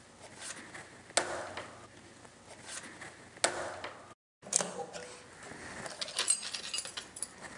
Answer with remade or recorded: recorded